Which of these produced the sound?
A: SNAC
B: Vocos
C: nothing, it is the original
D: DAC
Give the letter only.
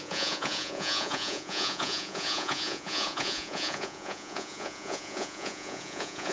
B